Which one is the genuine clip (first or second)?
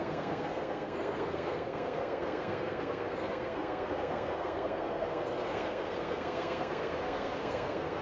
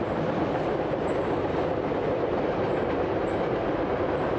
second